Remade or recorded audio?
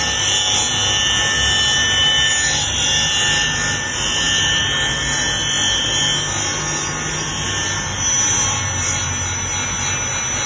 recorded